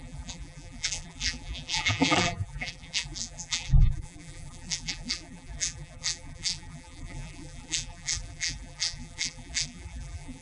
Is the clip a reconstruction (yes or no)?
yes